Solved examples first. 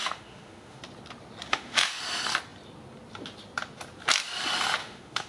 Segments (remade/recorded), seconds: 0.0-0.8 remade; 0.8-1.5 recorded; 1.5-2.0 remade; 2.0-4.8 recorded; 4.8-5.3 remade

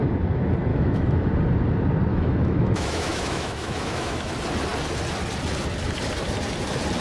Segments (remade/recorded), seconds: 0.0-0.7 recorded; 0.7-1.3 remade; 1.3-2.1 recorded; 2.1-4.3 remade; 4.3-7.0 recorded

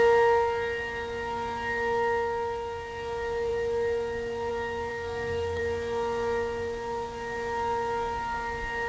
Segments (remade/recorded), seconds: 0.0-4.9 recorded; 4.9-5.6 remade; 5.6-8.9 recorded

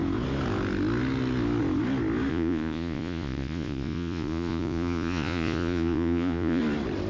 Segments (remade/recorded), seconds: 0.0-2.3 recorded; 2.3-6.6 remade; 6.6-7.1 recorded